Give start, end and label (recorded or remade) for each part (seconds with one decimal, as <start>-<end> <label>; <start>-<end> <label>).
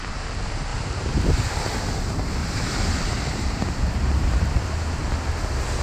0.0-0.7 recorded; 0.7-1.3 remade; 1.3-2.4 recorded; 2.4-5.0 remade; 5.0-5.8 recorded